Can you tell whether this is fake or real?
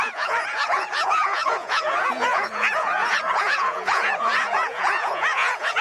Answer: fake